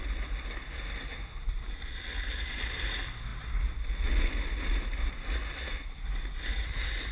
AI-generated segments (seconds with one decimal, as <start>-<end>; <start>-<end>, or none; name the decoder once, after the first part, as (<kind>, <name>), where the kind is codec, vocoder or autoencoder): none